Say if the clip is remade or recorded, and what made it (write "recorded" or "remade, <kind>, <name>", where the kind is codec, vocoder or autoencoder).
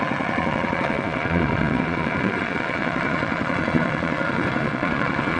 remade, vocoder, Vocos